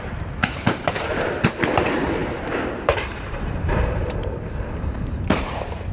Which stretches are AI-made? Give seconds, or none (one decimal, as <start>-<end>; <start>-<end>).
0.0-2.2; 2.7-5.9